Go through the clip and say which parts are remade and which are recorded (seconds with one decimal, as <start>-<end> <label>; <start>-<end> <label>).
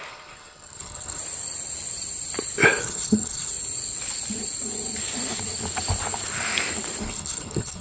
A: 0.0-1.2 remade; 1.2-2.8 recorded; 2.8-3.5 remade; 3.5-7.0 recorded; 7.0-7.8 remade